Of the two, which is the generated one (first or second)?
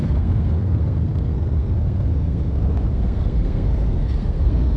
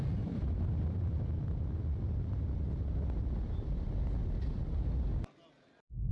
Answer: first